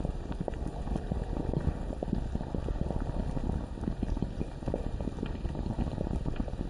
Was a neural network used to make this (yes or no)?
no